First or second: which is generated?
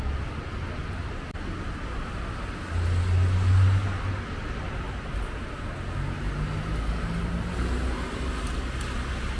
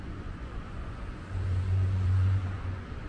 second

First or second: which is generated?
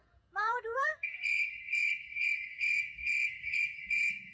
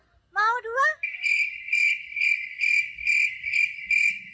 first